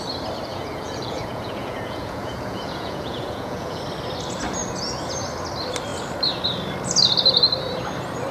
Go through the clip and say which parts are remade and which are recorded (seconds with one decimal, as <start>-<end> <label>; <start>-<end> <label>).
0.0-0.5 recorded; 0.5-3.8 remade; 3.8-8.3 recorded